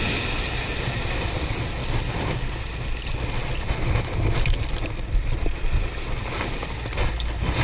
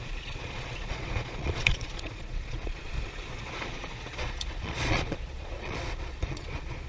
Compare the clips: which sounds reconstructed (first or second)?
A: second